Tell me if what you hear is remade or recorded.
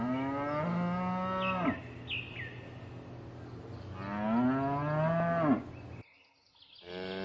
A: recorded